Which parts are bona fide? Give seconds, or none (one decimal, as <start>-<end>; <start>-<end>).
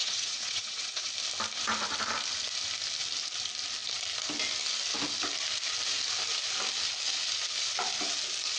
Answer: 1.1-8.6